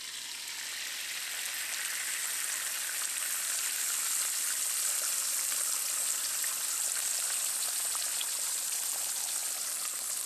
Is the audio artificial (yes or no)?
no